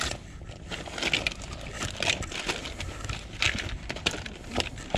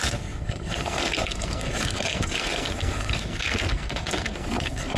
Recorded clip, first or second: first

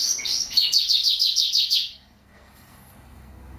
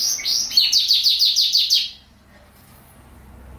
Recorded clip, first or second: second